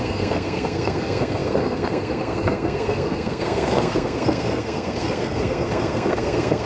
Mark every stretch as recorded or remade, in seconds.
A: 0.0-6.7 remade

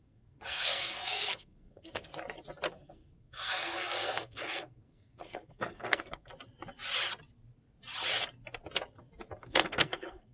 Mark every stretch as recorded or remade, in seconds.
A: 0.0-2.1 remade; 2.1-2.7 recorded; 2.7-6.3 remade; 6.3-9.4 recorded; 9.4-10.3 remade

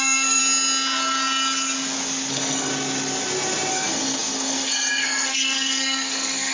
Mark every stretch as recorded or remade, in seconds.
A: 0.0-0.4 remade; 0.4-2.3 recorded; 2.3-2.7 remade; 2.7-3.7 recorded; 3.7-6.5 remade

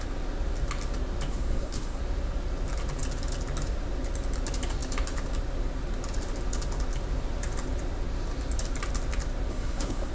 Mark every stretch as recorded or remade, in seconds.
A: 0.0-1.3 recorded; 1.3-2.0 remade; 2.0-9.5 recorded; 9.5-10.1 remade